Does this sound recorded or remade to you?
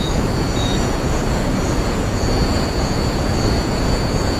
remade